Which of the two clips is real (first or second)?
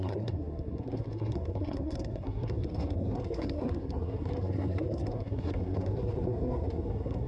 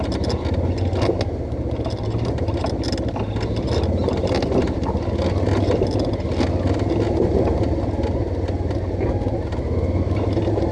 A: second